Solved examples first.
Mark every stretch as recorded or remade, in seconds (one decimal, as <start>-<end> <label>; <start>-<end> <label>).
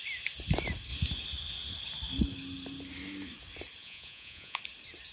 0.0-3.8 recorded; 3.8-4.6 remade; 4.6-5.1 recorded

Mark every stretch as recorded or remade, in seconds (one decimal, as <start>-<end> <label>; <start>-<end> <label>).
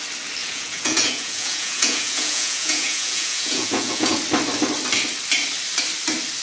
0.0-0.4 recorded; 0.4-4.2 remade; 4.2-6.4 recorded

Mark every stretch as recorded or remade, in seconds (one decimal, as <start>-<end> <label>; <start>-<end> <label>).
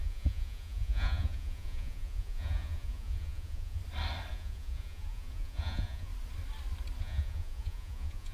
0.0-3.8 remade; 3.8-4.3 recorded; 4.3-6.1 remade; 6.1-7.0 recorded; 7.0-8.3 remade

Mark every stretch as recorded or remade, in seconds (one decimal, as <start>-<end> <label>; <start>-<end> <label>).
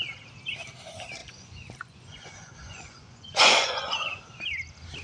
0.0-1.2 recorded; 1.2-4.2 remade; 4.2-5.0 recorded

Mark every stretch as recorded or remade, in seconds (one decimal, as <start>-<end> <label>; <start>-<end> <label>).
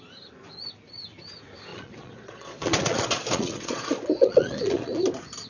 0.0-1.7 recorded; 1.7-5.0 remade; 5.0-5.5 recorded